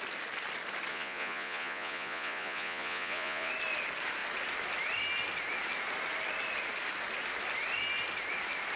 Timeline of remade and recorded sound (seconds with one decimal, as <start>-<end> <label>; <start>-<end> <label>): 0.0-0.9 recorded; 0.9-3.5 remade; 3.5-8.8 recorded